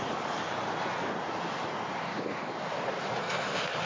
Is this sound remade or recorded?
recorded